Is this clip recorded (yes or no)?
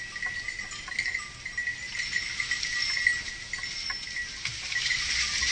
yes